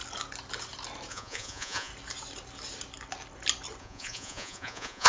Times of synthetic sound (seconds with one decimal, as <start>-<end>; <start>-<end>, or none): 1.1-1.9; 3.8-5.1